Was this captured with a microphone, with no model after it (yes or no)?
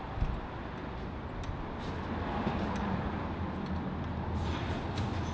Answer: yes